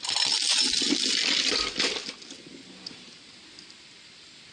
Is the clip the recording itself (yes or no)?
yes